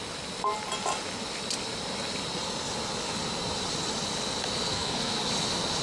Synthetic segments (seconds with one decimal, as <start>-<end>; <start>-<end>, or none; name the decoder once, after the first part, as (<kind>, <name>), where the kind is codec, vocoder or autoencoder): 4.7-5.2 (codec, SNAC)